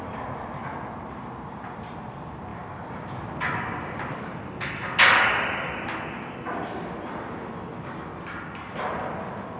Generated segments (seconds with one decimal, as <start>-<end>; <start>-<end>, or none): none